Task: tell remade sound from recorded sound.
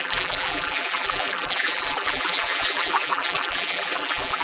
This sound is remade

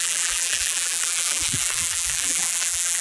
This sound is remade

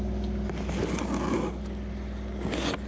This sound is recorded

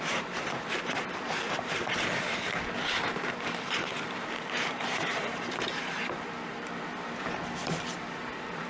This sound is remade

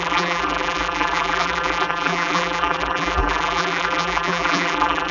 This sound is remade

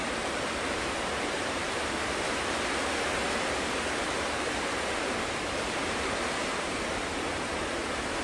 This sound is remade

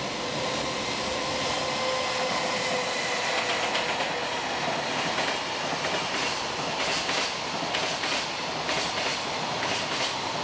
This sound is recorded